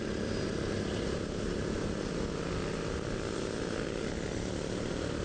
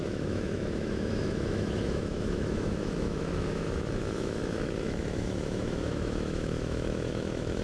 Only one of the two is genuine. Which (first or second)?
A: first